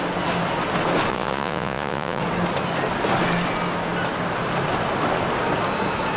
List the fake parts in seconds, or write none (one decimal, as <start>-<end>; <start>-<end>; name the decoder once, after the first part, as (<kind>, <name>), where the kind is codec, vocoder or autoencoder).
1.1-2.2 (vocoder, Vocos)